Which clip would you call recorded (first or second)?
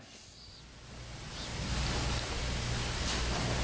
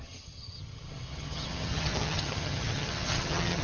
first